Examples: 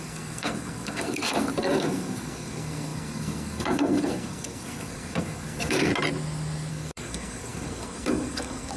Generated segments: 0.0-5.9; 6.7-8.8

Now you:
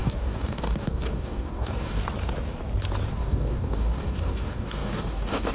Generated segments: 0.0-2.0; 3.1-5.5

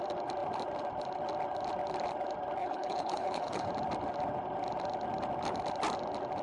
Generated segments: 2.6-3.7

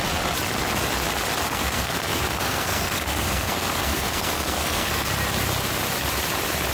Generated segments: 1.4-5.1